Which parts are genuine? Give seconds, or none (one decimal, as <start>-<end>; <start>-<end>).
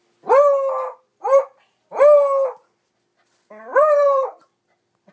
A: 0.0-1.1; 2.0-3.7